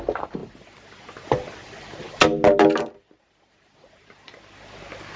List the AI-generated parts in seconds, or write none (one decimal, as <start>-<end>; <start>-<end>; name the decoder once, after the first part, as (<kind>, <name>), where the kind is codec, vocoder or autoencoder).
none